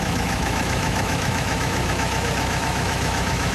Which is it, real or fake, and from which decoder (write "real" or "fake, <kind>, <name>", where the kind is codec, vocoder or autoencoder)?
fake, autoencoder, DAC-VAE